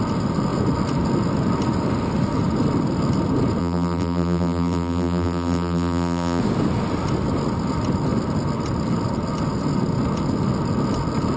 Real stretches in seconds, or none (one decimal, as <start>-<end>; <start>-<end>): 0.0-3.6; 6.4-11.4